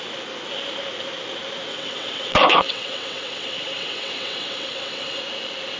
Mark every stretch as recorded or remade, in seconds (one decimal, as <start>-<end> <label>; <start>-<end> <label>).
0.0-1.7 recorded; 1.7-5.2 remade; 5.2-5.8 recorded